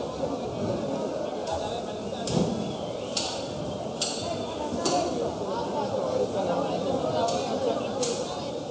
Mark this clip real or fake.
real